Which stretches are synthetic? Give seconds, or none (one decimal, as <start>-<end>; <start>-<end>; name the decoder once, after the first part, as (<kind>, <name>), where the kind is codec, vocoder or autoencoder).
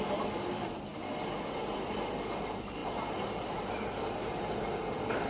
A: 2.8-4.6 (vocoder, BigVGAN v2)